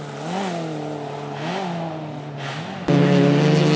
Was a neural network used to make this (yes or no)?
no